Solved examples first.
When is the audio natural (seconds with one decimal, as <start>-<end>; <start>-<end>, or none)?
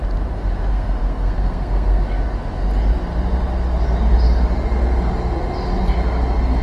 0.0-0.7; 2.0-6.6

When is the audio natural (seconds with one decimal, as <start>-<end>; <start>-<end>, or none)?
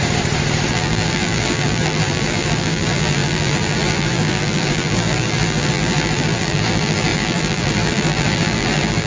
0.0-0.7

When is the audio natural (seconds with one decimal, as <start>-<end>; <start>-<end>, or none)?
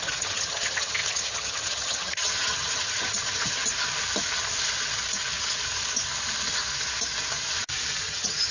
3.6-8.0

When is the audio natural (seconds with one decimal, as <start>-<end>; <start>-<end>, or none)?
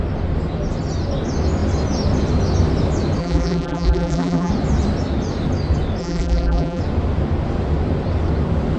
0.0-3.2; 4.5-6.0; 6.8-8.8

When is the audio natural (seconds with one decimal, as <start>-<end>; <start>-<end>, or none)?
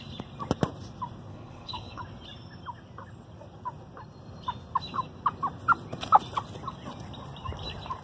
0.0-1.3; 2.0-8.0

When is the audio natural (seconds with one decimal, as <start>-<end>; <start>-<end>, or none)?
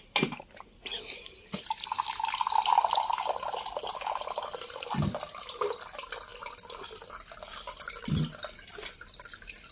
0.0-6.3; 7.9-9.7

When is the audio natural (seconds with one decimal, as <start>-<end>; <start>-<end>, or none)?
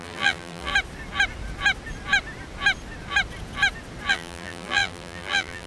0.7-4.1